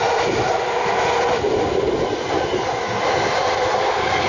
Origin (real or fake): real